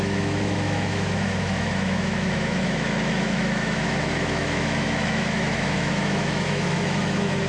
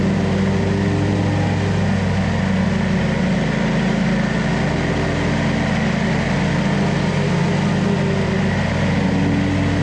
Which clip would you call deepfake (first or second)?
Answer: first